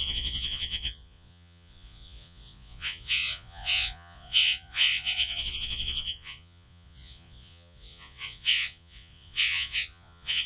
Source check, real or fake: fake